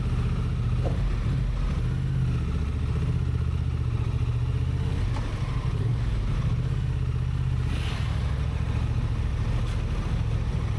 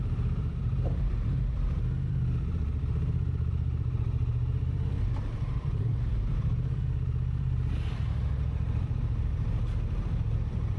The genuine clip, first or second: first